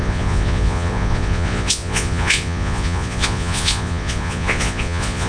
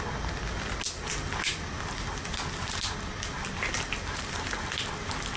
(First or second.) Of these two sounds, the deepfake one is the first